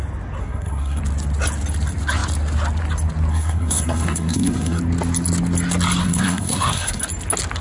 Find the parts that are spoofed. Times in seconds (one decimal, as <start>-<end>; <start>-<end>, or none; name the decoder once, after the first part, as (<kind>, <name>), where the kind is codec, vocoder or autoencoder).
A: 0.4-1.0 (codec, SNAC); 3.3-4.8; 6.0-7.0